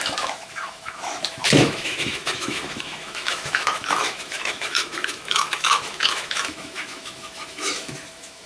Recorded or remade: remade